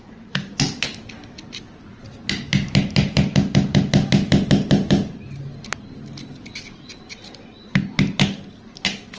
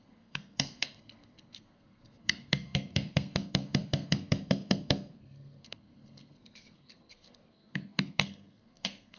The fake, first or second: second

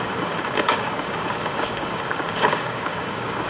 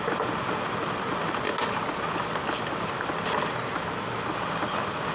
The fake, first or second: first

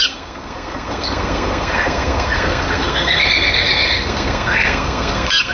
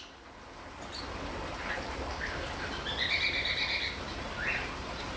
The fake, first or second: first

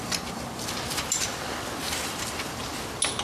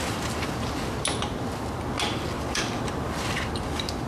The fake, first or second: first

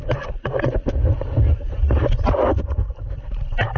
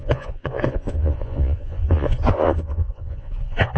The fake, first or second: second